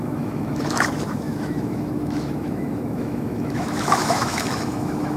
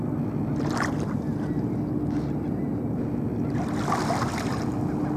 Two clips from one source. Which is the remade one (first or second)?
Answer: first